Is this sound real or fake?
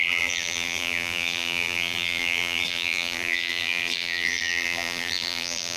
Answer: fake